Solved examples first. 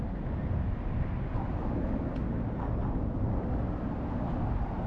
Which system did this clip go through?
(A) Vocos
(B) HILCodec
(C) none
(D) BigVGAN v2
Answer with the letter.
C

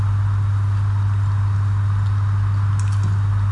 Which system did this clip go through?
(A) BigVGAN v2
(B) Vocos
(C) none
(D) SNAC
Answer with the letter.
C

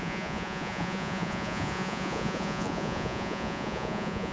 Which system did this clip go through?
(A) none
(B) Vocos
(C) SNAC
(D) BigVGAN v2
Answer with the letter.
B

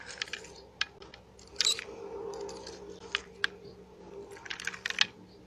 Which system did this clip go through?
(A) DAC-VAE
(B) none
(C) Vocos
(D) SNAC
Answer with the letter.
B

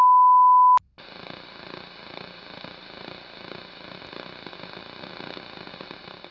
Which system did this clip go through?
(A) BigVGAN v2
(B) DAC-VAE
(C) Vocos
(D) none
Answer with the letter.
D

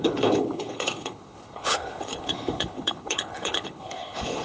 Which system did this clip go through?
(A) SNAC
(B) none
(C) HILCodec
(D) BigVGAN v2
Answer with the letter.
C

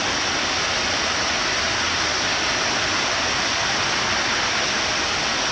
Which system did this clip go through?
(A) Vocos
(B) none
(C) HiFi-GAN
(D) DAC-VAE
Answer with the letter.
B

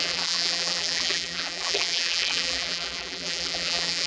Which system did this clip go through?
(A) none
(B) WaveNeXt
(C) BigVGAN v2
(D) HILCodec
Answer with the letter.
C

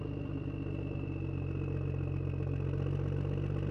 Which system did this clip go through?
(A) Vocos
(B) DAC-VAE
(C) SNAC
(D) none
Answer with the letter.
D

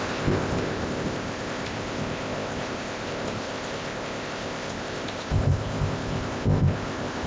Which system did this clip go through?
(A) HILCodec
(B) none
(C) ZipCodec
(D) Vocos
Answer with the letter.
C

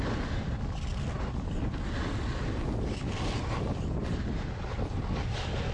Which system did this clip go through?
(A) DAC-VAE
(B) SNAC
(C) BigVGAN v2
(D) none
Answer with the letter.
D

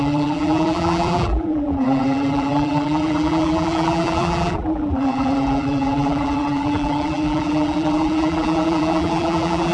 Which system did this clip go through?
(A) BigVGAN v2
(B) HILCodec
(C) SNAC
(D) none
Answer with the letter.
A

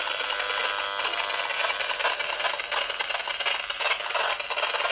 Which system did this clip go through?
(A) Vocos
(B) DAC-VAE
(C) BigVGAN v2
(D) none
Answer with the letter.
D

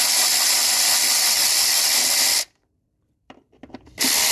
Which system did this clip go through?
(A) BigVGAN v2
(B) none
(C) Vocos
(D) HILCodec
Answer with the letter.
A